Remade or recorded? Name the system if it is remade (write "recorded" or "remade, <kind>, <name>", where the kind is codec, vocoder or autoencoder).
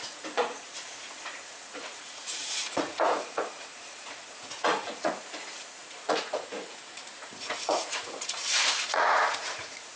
remade, vocoder, Vocos